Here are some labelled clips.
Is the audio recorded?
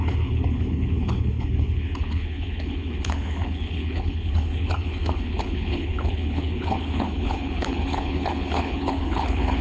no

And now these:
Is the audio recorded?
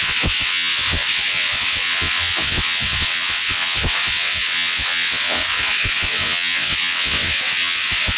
no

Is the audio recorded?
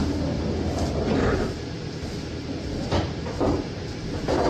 yes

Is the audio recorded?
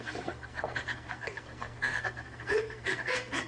no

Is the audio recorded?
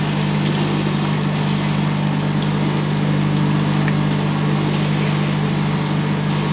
yes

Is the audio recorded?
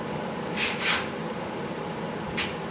yes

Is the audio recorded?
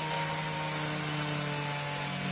yes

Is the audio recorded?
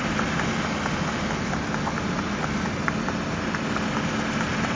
yes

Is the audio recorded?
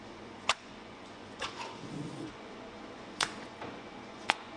no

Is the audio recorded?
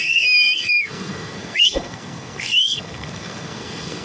no